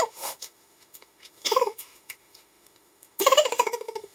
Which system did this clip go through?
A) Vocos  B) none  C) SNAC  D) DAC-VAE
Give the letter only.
D